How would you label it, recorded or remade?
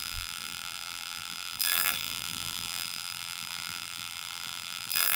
remade